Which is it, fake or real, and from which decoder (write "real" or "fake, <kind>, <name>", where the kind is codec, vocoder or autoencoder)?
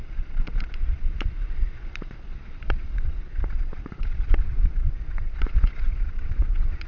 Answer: fake, vocoder, Vocos